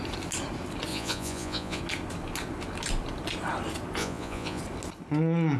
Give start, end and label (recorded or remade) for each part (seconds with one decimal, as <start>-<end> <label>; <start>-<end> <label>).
0.0-0.9 recorded; 0.9-1.8 remade; 1.8-4.0 recorded; 4.0-4.6 remade; 4.6-5.6 recorded